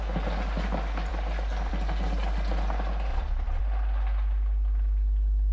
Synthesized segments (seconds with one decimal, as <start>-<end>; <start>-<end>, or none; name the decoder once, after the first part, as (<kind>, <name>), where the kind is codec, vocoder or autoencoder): 3.1-3.6 (vocoder, Vocos)